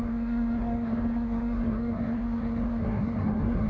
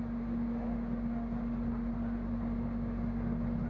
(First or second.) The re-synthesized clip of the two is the first